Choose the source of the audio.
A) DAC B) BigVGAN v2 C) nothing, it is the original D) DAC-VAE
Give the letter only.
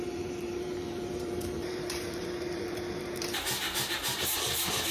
B